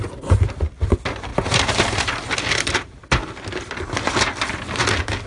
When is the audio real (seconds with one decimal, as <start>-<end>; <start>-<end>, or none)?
0.0-5.3